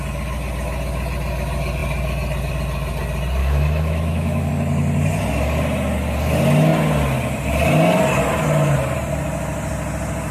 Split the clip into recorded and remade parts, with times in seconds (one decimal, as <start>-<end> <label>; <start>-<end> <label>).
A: 0.0-3.4 recorded; 3.4-4.5 remade; 4.5-10.3 recorded